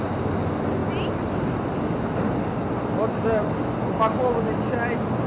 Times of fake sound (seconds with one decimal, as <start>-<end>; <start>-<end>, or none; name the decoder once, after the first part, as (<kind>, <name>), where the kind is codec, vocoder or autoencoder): none